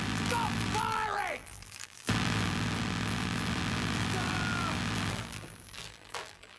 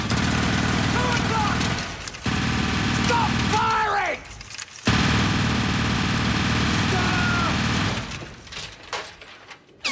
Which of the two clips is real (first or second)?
second